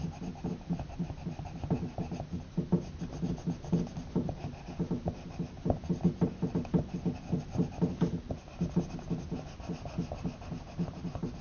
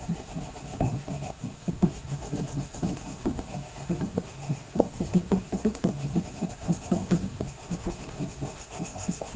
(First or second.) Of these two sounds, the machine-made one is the second